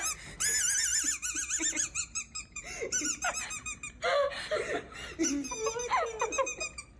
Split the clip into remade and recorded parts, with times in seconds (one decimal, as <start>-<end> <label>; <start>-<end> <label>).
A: 0.0-7.0 recorded